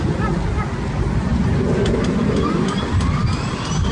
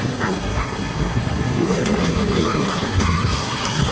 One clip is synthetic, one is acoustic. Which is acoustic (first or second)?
first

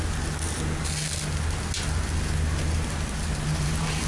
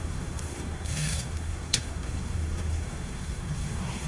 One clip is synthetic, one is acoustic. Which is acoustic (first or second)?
first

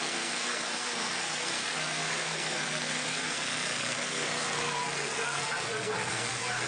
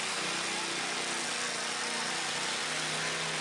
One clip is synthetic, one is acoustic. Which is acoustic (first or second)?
second